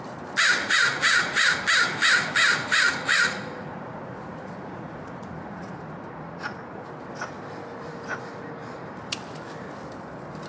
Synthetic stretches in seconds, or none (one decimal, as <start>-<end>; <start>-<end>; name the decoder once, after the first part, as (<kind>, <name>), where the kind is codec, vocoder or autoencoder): 0.6-1.5 (vocoder, Vocos); 2.4-6.9